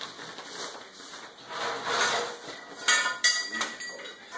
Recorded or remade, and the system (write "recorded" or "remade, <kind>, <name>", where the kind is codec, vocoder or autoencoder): recorded